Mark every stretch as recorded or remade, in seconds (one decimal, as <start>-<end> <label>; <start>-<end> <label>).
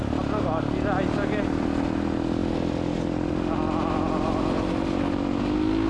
0.0-5.9 recorded